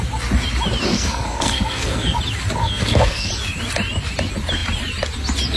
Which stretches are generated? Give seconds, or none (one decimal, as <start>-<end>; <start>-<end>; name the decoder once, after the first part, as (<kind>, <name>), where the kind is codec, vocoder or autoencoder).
0.9-2.2 (codec, SNAC); 2.6-3.3